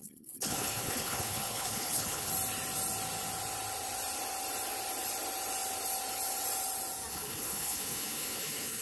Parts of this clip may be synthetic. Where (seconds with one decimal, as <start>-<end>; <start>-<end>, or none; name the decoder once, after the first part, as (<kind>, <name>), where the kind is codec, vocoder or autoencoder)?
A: 0.0-2.3 (codec, HILCodec); 7.1-8.8